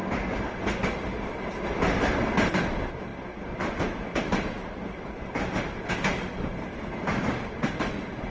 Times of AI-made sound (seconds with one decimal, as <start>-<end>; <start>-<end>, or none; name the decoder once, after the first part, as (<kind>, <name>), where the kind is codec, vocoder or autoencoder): none